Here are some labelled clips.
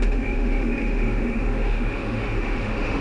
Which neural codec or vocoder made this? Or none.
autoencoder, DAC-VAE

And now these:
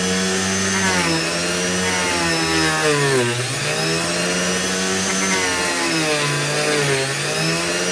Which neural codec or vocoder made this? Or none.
none